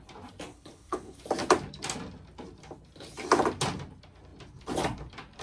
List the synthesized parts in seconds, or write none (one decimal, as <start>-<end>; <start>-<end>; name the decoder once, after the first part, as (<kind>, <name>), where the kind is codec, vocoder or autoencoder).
0.5-1.2 (codec, HILCodec)